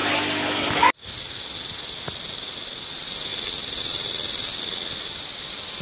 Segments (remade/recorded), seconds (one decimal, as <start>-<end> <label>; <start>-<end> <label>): 0.0-5.8 recorded